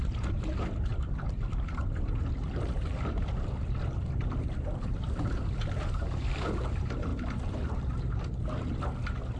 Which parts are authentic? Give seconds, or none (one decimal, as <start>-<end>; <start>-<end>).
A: 0.0-9.4